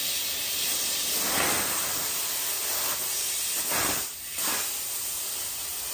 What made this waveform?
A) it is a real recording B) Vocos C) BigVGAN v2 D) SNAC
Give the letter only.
A